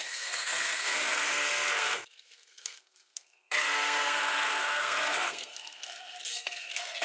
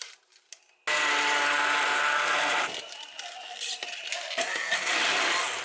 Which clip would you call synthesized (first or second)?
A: first